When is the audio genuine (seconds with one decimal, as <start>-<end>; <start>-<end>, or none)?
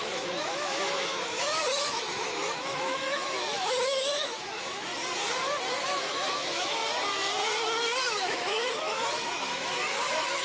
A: 4.9-5.8; 6.8-8.1